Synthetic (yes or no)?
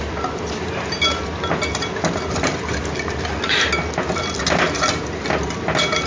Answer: no